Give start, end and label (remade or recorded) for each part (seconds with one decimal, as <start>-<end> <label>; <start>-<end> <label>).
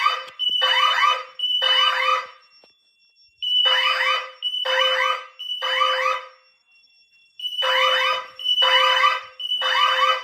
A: 0.0-10.2 recorded